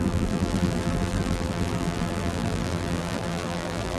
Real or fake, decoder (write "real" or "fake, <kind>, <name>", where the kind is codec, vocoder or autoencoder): fake, vocoder, BigVGAN v2